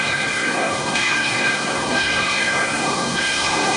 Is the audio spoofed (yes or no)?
yes